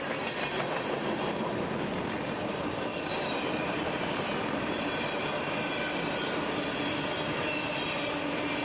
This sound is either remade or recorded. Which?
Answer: recorded